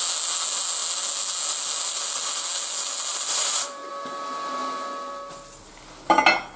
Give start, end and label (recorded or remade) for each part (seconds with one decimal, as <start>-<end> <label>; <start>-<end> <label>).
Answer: 0.0-3.3 recorded; 3.3-3.9 remade; 3.9-6.6 recorded